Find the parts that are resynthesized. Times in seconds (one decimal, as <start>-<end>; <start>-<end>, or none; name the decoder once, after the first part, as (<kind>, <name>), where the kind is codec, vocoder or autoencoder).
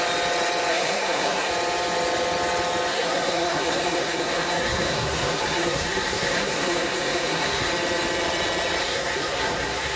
0.7-1.5 (codec, SNAC); 2.9-7.7; 8.8-10.0